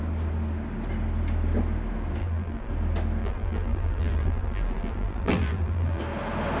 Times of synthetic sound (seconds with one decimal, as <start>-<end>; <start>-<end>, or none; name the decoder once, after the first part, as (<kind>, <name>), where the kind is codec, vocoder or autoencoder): 2.2-2.7 (vocoder, BigVGAN v2); 3.2-6.0